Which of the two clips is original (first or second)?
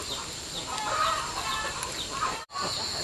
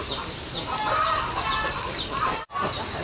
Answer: second